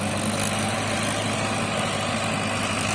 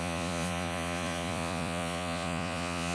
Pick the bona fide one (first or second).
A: first